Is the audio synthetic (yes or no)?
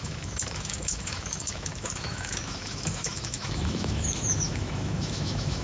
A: yes